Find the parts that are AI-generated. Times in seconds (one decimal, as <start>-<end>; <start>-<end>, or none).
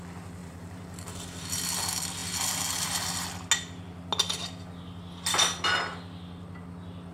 0.4-1.6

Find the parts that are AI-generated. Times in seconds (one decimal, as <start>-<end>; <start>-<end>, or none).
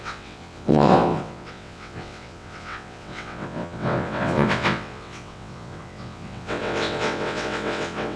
0.0-8.2